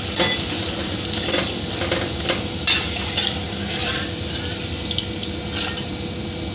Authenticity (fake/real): real